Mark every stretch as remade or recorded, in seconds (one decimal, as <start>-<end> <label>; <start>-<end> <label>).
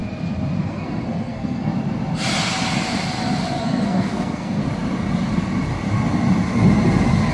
0.0-0.6 recorded; 0.6-1.7 remade; 1.7-3.6 recorded; 3.6-4.6 remade; 4.6-7.3 recorded